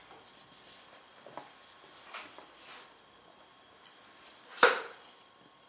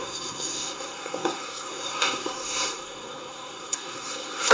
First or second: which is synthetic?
second